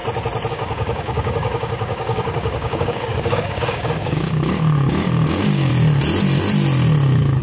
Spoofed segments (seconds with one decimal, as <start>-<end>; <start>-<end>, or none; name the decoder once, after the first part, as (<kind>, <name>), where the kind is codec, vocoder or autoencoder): 0.5-5.7 (codec, DAC)